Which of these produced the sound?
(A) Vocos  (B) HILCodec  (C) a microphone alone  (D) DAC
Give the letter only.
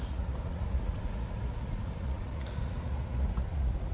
A